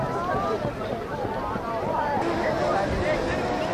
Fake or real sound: real